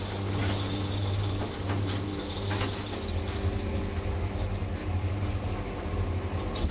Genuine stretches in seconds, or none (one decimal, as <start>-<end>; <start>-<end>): 0.0-0.4; 2.1-4.8